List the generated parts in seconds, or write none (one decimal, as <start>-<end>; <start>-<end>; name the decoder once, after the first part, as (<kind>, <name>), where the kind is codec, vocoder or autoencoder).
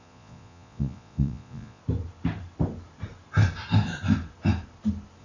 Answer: 0.0-1.8 (vocoder, Vocos)